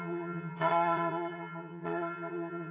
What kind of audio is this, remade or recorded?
remade